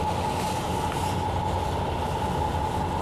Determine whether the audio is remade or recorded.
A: recorded